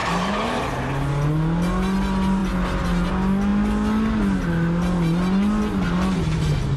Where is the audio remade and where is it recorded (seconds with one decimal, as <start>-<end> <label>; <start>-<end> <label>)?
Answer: 0.0-0.6 remade; 0.6-6.8 recorded